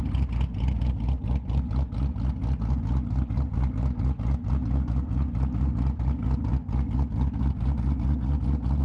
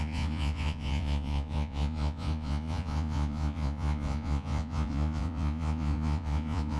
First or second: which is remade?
second